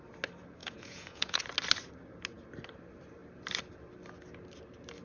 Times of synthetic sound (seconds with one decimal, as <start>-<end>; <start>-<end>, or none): 0.6-1.4